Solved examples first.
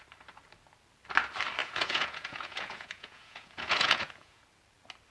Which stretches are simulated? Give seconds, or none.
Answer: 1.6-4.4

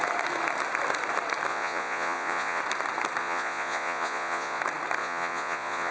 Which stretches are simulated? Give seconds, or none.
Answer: 1.5-2.6; 3.2-4.6; 5.0-5.9

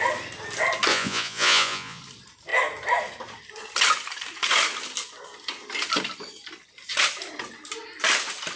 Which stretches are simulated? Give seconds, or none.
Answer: 0.9-2.0

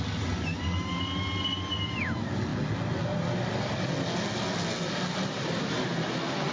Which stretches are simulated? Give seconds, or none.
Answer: none

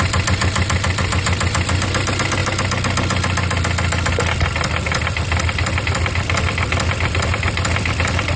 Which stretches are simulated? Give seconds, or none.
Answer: none

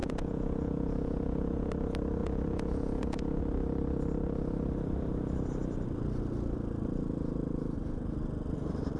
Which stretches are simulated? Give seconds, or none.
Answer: 0.0-1.7; 2.2-3.4

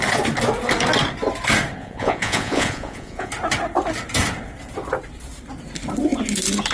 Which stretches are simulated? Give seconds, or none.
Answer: 1.8-3.3

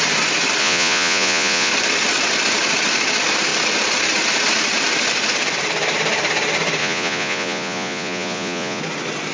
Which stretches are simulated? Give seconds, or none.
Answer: 0.6-1.7; 6.8-8.8